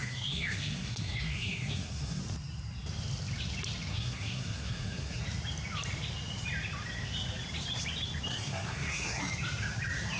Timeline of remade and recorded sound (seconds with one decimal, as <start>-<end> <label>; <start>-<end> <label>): 0.0-2.2 remade; 2.2-3.9 recorded; 3.9-5.2 remade; 5.2-8.3 recorded; 8.3-9.2 remade; 9.2-10.2 recorded